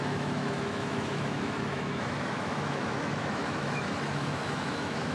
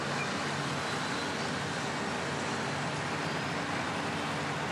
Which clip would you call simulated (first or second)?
first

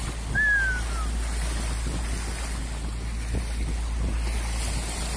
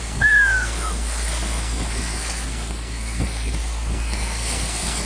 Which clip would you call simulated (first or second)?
second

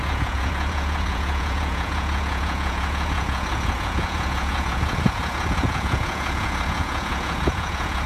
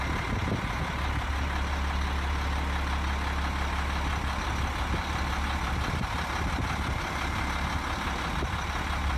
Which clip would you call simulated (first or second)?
first